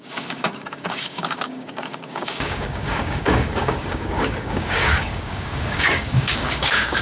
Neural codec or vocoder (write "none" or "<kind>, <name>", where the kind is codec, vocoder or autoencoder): codec, DAC